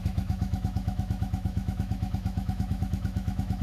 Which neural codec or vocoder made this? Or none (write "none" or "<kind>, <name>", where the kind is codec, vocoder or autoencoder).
autoencoder, DAC-VAE